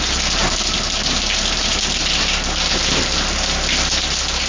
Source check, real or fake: real